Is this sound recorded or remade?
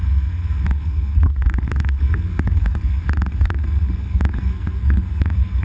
remade